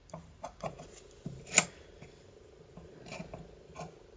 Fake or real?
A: real